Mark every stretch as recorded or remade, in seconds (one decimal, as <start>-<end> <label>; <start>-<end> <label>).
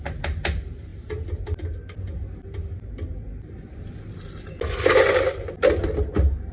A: 0.0-6.5 recorded